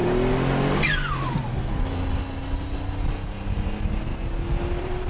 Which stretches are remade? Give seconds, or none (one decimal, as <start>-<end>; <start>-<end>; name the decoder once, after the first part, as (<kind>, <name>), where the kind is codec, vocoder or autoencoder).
4.1-5.1 (vocoder, BigVGAN v2)